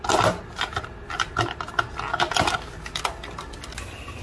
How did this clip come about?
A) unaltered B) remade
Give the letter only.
A